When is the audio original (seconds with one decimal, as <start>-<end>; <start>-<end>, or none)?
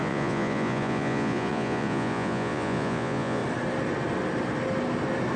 3.4-5.4